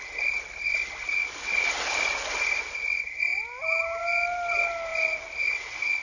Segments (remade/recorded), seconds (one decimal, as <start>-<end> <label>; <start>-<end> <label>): 0.0-6.0 recorded